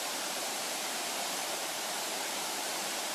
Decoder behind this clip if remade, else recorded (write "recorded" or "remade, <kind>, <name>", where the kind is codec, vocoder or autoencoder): remade, vocoder, BigVGAN v2